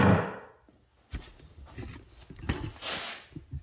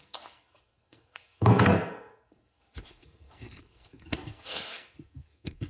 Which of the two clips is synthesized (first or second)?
second